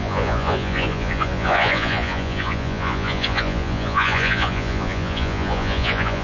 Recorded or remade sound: remade